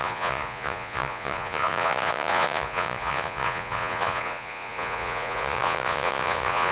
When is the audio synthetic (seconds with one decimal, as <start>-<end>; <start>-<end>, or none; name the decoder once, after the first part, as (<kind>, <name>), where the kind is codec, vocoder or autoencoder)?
0.0-6.7 (vocoder, Vocos)